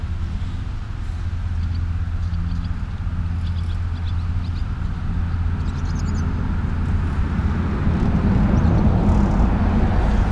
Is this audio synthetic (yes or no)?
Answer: no